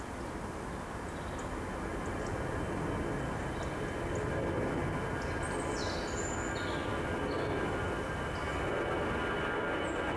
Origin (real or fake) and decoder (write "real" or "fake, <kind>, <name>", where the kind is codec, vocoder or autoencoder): real